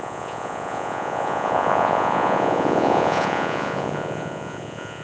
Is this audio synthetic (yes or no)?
yes